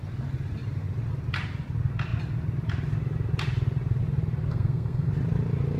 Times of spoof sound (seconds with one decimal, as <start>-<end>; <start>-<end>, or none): 4.5-5.1